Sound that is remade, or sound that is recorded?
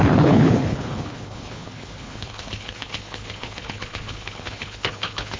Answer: remade